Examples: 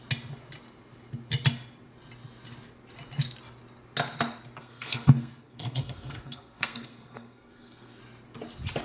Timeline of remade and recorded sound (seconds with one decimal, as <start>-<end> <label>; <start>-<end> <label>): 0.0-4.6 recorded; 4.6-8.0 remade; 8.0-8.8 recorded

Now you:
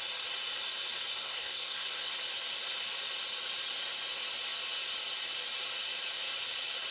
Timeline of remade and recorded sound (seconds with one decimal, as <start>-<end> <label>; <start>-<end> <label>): 0.0-1.2 recorded; 1.2-2.1 remade; 2.1-6.9 recorded

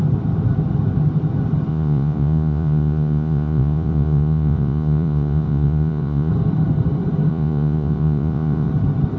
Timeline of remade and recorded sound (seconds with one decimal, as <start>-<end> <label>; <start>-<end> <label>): 0.0-1.7 recorded; 1.7-6.3 remade; 6.3-7.3 recorded; 7.3-8.7 remade; 8.7-9.2 recorded